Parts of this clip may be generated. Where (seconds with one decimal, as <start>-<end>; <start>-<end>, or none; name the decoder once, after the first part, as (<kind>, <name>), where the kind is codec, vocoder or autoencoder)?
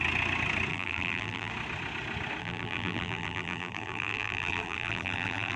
0.7-1.5 (vocoder, BigVGAN v2); 2.4-5.6